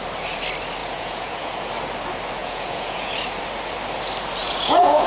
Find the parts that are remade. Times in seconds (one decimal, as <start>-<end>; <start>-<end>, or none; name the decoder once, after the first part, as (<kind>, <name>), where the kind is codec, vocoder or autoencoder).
0.8-1.7 (vocoder, Vocos); 2.4-3.1; 4.4-5.1